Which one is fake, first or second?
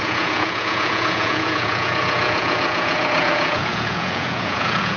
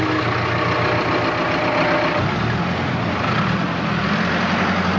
first